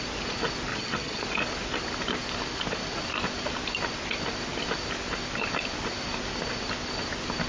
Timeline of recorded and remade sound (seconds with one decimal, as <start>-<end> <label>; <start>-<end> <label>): 0.0-0.7 recorded; 0.7-1.2 remade; 1.2-7.5 recorded